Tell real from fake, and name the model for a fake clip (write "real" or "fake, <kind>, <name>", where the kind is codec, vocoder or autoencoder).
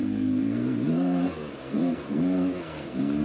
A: fake, codec, SNAC